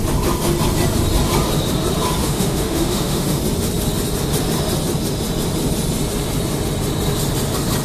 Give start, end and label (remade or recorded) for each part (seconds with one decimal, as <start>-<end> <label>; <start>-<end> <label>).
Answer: 0.0-2.2 recorded; 2.2-3.4 remade; 3.4-7.8 recorded